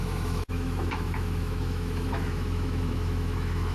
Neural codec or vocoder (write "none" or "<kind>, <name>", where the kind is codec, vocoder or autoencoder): autoencoder, DAC-VAE